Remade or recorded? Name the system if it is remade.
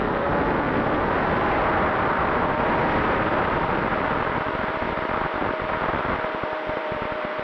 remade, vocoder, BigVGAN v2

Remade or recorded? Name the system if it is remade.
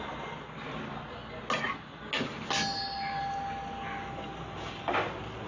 recorded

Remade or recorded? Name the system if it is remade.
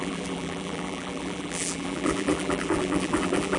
remade, vocoder, BigVGAN v2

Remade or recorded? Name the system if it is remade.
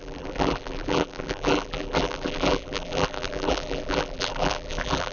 remade, vocoder, BigVGAN v2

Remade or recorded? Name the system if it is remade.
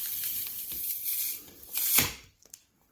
remade, vocoder, BigVGAN v2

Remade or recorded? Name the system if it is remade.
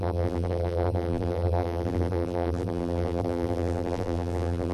remade, vocoder, BigVGAN v2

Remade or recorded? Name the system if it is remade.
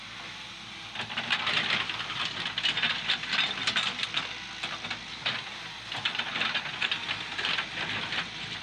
recorded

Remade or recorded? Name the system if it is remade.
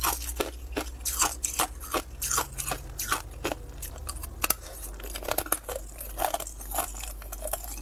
recorded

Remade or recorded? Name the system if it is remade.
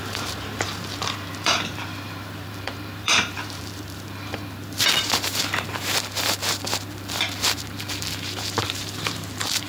remade, vocoder, BigVGAN v2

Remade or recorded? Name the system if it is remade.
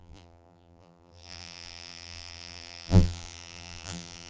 remade, vocoder, BigVGAN v2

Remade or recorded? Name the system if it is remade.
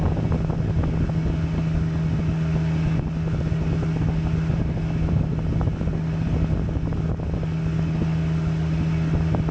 recorded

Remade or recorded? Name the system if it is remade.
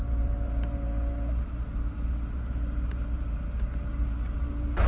remade, vocoder, BigVGAN v2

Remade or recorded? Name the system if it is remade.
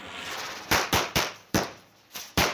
remade, vocoder, BigVGAN v2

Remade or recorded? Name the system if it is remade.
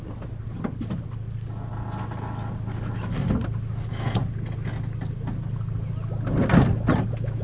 recorded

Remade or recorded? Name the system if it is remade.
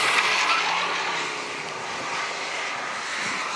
recorded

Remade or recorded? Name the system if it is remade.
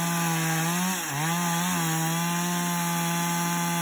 recorded